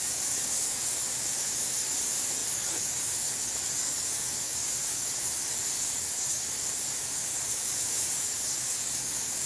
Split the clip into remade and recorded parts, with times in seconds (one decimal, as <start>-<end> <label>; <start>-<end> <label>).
0.0-9.5 remade